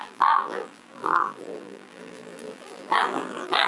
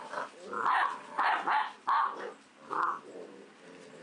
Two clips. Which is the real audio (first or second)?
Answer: second